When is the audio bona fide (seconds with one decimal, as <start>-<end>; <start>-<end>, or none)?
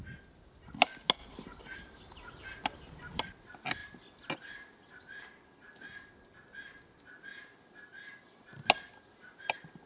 0.0-1.2; 3.2-9.9